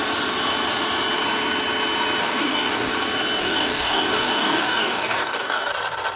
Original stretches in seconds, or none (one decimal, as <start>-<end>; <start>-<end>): 0.0-2.2; 2.9-3.4; 5.7-6.2